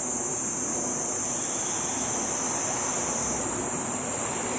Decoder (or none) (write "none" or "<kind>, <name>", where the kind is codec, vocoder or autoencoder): vocoder, BigVGAN v2